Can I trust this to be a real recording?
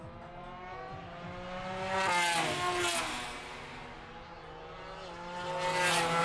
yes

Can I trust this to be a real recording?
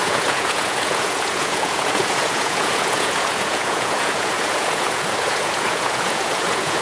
no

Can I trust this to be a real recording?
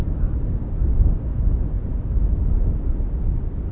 yes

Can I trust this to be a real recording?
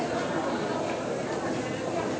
yes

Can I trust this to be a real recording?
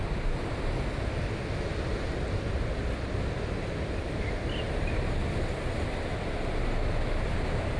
yes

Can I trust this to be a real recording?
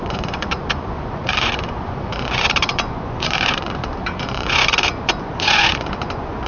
no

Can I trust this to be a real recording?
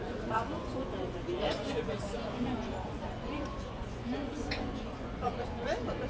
no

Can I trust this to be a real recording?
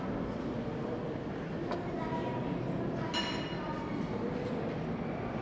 yes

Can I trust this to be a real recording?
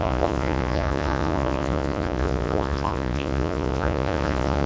no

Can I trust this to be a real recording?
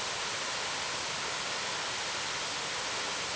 yes